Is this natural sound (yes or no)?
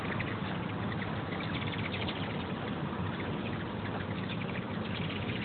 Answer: yes